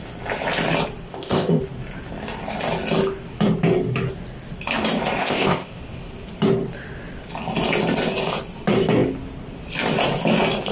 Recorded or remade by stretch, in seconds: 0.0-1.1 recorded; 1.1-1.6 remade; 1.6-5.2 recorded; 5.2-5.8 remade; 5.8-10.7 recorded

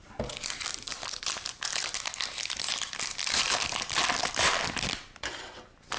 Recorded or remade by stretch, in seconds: 0.0-6.0 recorded

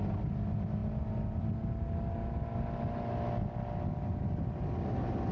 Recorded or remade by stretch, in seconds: 0.0-5.3 recorded

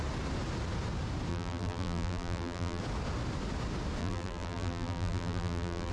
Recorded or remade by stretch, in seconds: 0.0-1.3 recorded; 1.3-2.8 remade; 2.8-4.0 recorded; 4.0-5.9 remade

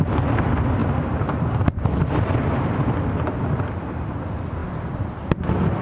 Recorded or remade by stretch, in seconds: 0.0-5.8 recorded

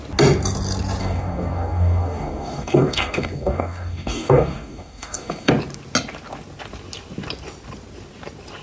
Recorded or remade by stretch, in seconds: 0.0-1.0 recorded; 1.0-5.5 remade; 5.5-8.6 recorded